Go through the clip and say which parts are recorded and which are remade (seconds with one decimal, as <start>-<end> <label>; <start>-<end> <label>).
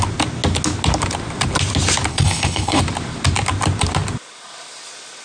0.0-2.1 recorded; 2.1-2.8 remade; 2.8-5.2 recorded